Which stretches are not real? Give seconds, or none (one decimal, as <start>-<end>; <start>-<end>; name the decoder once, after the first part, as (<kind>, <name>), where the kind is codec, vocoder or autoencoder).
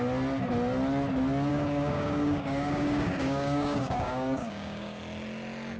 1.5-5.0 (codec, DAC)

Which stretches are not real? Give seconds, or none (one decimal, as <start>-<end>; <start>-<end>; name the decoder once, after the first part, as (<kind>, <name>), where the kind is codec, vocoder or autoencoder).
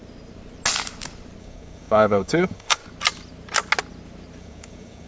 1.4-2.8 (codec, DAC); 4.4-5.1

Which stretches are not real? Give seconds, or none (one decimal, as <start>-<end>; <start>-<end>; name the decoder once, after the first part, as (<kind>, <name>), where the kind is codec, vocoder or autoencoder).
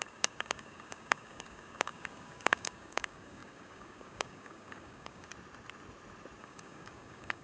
0.0-5.3 (codec, DAC); 6.4-7.4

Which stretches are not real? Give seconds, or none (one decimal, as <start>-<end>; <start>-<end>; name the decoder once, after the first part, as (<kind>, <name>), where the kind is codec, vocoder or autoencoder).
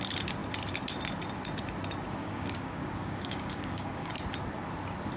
2.2-4.1 (codec, DAC)